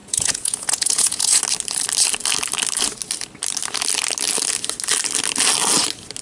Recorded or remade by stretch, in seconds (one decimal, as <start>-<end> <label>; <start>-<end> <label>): 0.0-1.4 remade; 1.4-6.2 recorded